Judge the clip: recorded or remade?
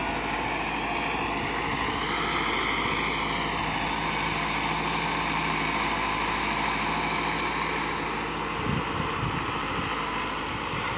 recorded